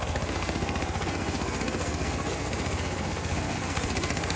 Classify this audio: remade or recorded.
remade